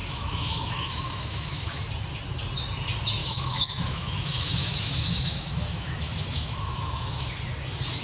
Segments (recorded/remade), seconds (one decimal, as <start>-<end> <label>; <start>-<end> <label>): 0.0-1.8 remade; 1.8-3.2 recorded; 3.2-7.3 remade; 7.3-8.0 recorded